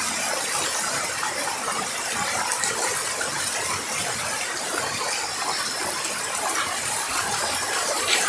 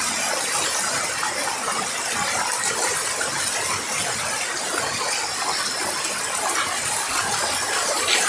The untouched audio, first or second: second